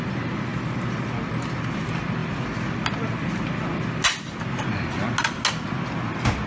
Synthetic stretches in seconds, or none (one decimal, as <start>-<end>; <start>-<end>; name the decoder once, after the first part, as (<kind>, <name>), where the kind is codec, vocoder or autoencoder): none